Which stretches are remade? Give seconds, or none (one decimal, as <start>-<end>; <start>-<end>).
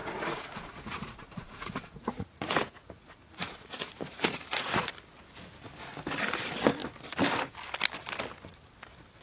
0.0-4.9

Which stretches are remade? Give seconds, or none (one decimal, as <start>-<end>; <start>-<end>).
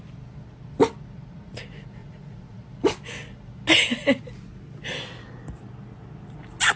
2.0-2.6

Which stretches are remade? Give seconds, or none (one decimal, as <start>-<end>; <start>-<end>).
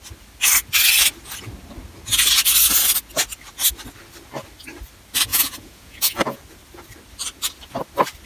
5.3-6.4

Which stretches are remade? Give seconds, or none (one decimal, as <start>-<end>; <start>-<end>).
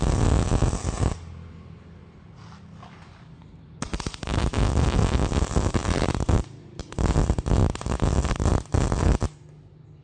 none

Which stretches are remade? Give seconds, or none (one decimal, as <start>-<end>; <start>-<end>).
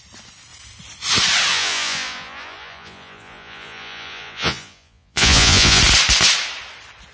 1.5-5.8